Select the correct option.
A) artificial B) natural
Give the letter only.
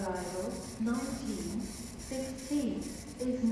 B